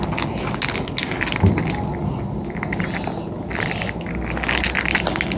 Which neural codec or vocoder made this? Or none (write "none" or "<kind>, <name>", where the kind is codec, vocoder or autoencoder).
none